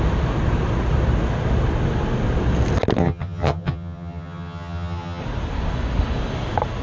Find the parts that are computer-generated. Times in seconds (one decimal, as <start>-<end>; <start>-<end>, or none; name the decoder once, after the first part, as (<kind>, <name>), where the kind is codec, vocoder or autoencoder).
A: 3.0-5.2 (vocoder, HiFi-GAN)